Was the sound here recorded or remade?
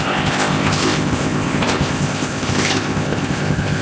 remade